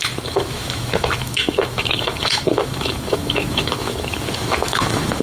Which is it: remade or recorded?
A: remade